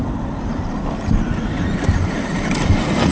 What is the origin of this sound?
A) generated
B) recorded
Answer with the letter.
B